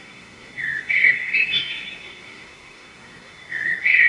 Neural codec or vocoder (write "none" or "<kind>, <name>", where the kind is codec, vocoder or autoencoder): codec, SNAC